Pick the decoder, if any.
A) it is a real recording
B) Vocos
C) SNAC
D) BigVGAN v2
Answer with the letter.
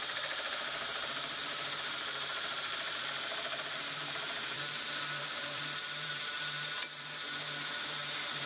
D